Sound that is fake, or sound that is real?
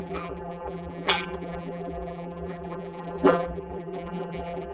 fake